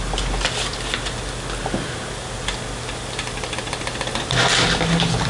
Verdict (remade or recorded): recorded